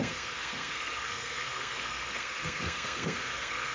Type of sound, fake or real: fake